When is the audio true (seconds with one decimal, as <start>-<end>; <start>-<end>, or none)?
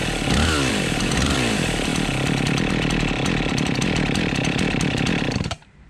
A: 0.0-0.7; 1.9-2.7